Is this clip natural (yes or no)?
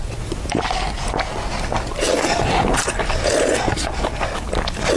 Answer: yes